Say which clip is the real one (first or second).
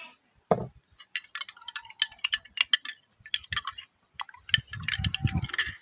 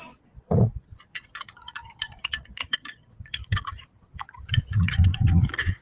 first